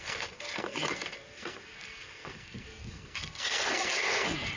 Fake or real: fake